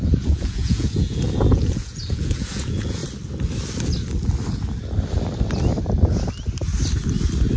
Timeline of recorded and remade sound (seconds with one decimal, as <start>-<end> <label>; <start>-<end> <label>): 0.0-3.0 remade; 3.0-7.6 recorded